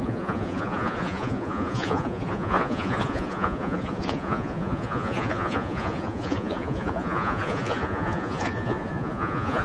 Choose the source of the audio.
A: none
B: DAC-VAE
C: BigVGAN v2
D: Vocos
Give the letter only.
D